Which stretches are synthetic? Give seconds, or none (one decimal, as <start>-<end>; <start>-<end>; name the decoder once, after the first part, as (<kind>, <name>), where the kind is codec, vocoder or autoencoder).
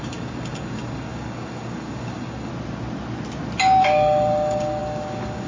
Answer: 0.0-2.5 (codec, DAC); 3.8-5.5